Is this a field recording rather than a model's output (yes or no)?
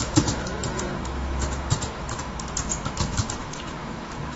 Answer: no